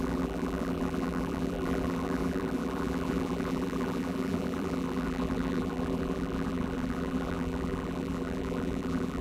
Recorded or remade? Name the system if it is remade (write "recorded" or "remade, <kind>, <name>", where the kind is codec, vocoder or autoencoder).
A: remade, vocoder, BigVGAN v2